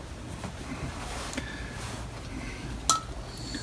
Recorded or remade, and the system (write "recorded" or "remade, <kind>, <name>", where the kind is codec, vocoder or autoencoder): recorded